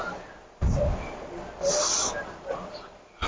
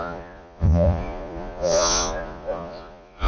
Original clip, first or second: first